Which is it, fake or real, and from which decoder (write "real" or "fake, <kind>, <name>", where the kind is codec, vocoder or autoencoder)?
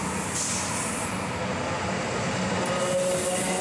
real